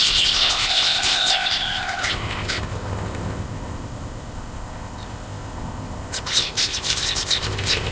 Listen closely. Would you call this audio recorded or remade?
remade